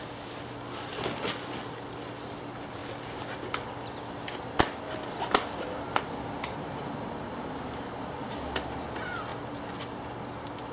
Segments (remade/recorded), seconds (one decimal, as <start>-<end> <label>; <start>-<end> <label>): 0.0-10.7 recorded